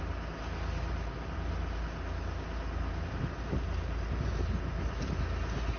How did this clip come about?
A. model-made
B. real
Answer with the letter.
B